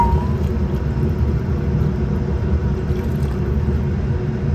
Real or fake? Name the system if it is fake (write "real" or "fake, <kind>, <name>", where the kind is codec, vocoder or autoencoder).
real